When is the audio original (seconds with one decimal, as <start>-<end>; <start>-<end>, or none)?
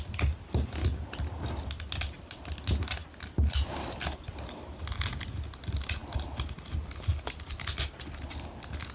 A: 0.0-8.9